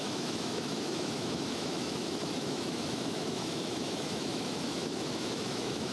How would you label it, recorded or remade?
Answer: remade